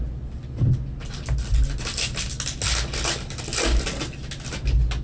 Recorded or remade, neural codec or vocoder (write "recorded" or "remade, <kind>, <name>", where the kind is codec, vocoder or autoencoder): recorded